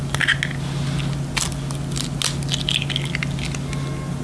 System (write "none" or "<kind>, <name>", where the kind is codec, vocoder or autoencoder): none